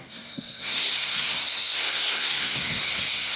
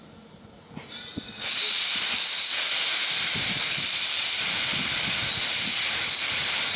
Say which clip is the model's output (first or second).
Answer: first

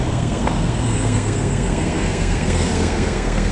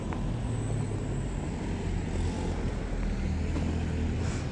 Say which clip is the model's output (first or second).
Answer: first